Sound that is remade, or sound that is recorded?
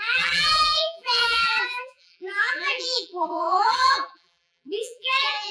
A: remade